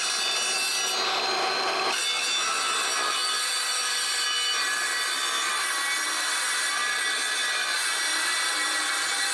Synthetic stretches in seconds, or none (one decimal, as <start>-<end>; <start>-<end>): none